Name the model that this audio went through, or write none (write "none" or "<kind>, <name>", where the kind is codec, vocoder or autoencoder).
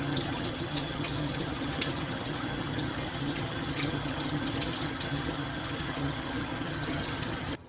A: vocoder, HiFi-GAN